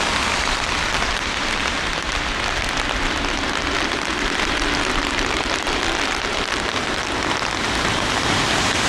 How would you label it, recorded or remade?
remade